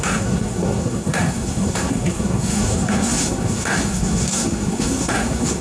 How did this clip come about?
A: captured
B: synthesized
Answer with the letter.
B